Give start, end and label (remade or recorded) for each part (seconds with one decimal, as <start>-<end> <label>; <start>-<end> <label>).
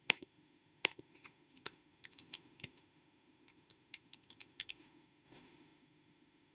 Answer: 0.0-6.5 remade